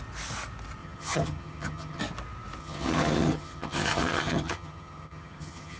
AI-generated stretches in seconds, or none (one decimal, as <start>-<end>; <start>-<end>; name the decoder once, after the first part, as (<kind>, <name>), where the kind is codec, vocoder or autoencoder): 0.8-2.0 (vocoder, HiFi-GAN); 2.6-5.8